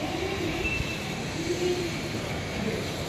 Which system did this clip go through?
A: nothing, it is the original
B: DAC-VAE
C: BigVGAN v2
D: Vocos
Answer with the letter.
C